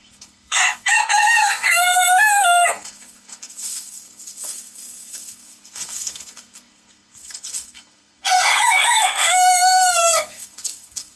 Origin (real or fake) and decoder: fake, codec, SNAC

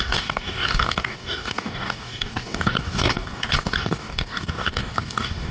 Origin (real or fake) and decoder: fake, codec, DAC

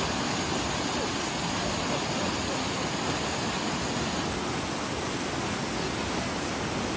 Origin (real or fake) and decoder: real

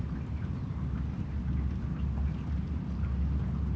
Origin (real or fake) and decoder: real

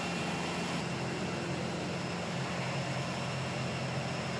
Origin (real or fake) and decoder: real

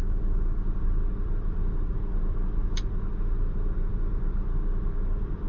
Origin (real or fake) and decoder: fake, vocoder, BigVGAN v2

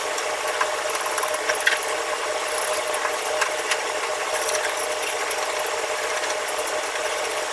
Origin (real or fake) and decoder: real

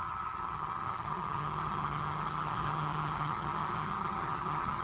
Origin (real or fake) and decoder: fake, vocoder, HiFi-GAN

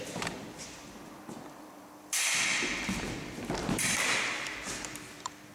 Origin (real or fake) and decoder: fake, vocoder, BigVGAN v2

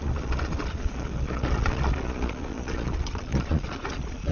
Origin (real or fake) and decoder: fake, vocoder, Vocos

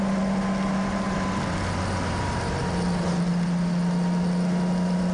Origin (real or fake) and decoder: real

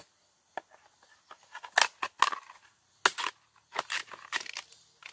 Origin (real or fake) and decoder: real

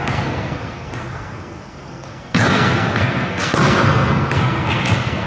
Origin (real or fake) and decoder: fake, codec, SNAC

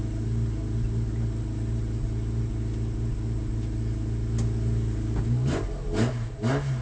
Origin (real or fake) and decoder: real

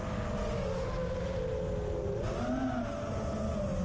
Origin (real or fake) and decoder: real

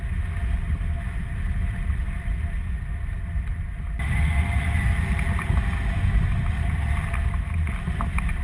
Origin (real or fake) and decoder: real